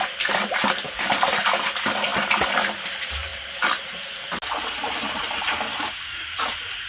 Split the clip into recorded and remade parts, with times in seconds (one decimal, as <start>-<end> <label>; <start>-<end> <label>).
0.0-5.7 recorded; 5.7-6.4 remade; 6.4-6.9 recorded

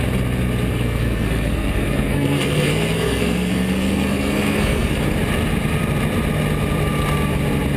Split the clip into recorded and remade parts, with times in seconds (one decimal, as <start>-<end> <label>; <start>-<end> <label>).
0.0-0.7 recorded; 0.7-4.9 remade; 4.9-7.8 recorded

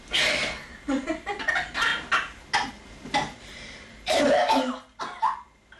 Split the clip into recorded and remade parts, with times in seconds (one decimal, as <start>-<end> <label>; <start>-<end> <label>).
0.0-1.9 remade; 1.9-3.4 recorded; 3.4-4.4 remade; 4.4-5.8 recorded

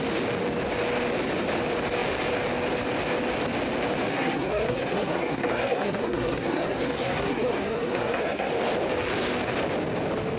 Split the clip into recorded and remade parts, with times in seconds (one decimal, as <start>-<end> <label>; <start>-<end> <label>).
0.0-4.1 recorded; 4.1-8.5 remade; 8.5-10.4 recorded

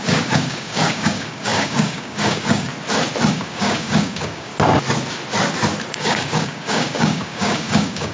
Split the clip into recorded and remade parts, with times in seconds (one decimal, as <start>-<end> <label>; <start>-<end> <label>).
0.0-2.7 remade; 2.7-3.3 recorded; 3.3-4.5 remade; 4.5-5.9 recorded; 5.9-8.1 remade

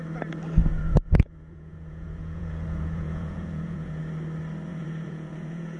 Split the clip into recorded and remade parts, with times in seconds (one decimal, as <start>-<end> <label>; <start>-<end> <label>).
0.0-0.6 recorded; 0.6-4.0 remade; 4.0-4.7 recorded; 4.7-5.8 remade